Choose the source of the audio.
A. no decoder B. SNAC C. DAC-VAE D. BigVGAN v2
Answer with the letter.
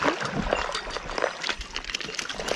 A